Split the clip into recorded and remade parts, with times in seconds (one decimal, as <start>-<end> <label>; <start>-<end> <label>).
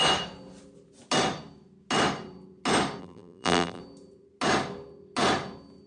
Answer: 0.0-3.0 recorded; 3.0-3.8 remade; 3.8-5.9 recorded